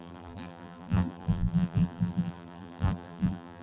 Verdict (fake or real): fake